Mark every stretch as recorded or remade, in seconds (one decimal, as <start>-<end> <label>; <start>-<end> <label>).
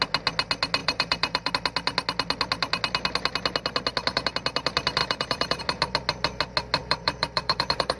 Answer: 0.0-0.8 recorded; 0.8-1.5 remade; 1.5-5.0 recorded; 5.0-5.6 remade; 5.6-6.8 recorded; 6.8-8.0 remade